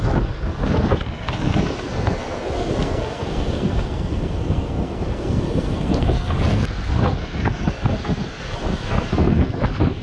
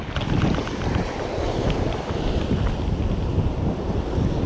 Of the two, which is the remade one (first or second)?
first